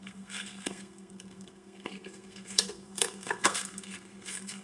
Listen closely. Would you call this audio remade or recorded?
remade